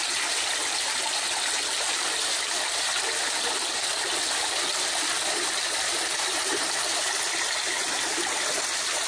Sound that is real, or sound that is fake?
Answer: real